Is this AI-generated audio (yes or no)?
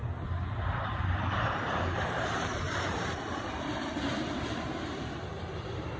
yes